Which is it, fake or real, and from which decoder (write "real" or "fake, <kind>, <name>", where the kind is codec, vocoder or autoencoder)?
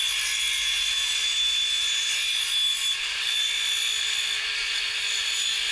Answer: real